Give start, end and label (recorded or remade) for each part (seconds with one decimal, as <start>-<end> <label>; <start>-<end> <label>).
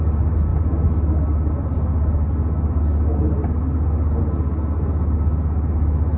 0.0-6.2 recorded